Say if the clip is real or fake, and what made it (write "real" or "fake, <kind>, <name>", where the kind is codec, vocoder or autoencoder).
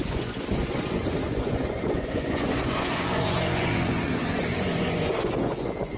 fake, vocoder, Vocos